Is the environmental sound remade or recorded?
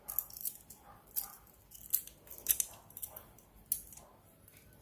recorded